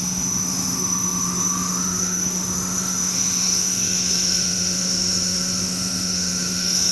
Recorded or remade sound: remade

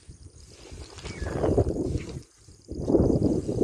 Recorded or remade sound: recorded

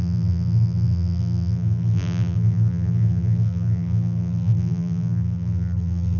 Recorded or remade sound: remade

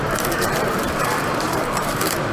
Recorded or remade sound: remade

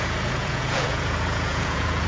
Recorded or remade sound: remade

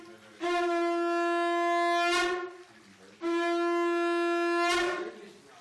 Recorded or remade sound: recorded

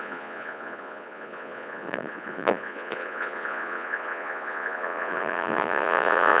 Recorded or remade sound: remade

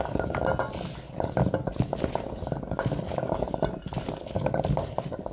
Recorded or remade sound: recorded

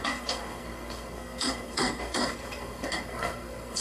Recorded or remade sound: remade